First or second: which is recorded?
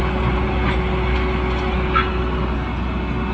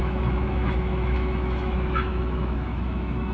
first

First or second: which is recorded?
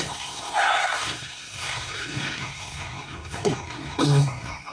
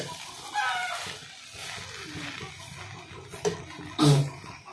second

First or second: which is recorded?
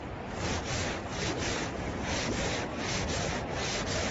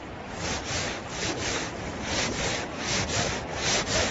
first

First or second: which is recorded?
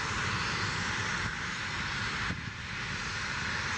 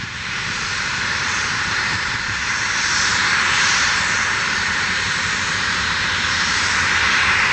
first